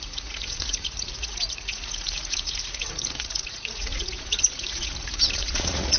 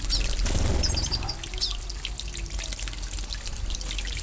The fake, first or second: first